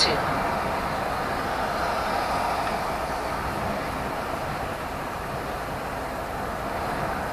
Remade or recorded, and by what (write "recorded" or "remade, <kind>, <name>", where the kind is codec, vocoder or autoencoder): recorded